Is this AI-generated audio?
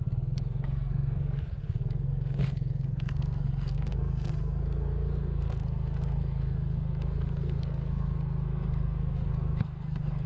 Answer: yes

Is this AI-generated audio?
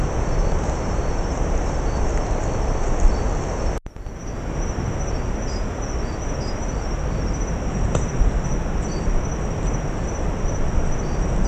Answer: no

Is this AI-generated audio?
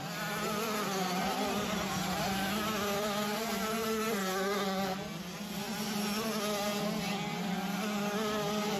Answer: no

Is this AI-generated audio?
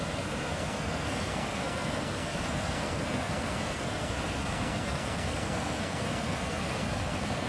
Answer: yes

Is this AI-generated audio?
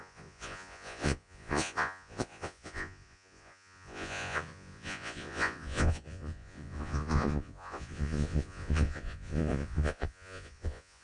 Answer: yes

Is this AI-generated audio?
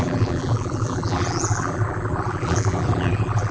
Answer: yes